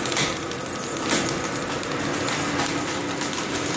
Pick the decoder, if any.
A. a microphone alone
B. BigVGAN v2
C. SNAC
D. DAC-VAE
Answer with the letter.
A